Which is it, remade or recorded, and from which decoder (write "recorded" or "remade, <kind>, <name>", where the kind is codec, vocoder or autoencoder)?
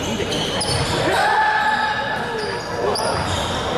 recorded